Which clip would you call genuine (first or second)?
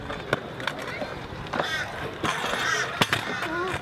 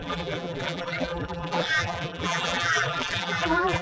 first